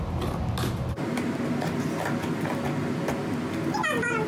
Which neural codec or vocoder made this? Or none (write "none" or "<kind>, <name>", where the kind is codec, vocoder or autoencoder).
none